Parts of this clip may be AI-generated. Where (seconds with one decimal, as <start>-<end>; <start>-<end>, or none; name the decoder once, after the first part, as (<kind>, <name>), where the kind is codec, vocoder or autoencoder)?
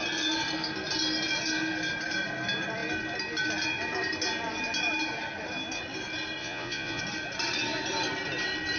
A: 6.4-7.0 (vocoder, Vocos)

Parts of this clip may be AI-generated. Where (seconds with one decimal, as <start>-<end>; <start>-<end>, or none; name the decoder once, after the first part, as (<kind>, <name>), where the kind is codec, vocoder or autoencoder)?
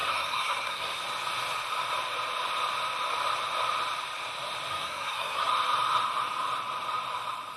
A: 0.0-1.0 (codec, SNAC); 4.7-5.5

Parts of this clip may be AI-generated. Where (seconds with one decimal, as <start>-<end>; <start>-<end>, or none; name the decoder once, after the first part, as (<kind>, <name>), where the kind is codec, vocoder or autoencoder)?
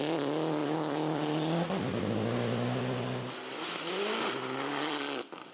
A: none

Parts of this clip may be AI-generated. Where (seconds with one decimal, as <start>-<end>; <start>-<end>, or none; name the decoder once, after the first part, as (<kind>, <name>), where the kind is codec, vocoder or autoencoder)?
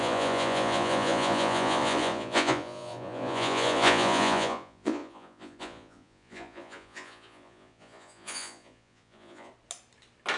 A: 0.0-9.5 (vocoder, Vocos)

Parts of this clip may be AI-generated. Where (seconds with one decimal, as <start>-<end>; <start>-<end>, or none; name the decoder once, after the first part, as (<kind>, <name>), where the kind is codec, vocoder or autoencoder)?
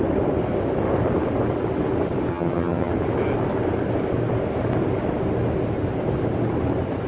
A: 2.3-2.9 (vocoder, HiFi-GAN)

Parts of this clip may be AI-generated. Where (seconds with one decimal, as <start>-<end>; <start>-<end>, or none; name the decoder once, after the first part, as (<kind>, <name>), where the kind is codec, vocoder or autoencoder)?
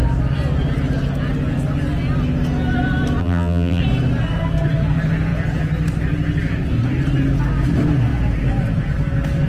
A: 3.2-3.8 (vocoder, BigVGAN v2)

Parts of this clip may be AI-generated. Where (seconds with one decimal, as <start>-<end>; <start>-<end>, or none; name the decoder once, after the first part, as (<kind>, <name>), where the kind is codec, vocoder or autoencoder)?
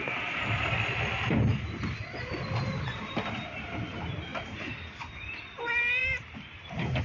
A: 6.0-7.0 (vocoder, BigVGAN v2)